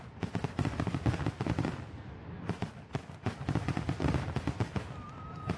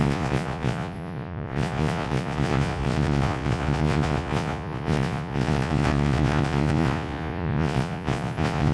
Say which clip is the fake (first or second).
second